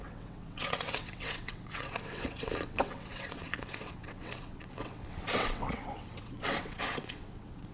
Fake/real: fake